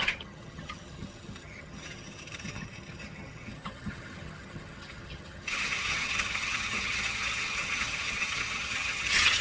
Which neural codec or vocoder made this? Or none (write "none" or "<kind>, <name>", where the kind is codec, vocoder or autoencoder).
vocoder, HiFi-GAN